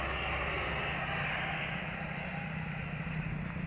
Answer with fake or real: real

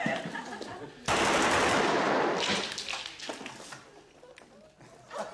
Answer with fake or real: real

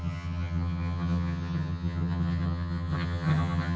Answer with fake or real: fake